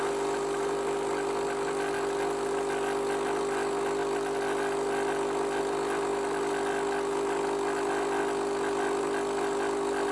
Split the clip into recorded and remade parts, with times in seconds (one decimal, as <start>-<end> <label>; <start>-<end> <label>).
0.0-10.1 recorded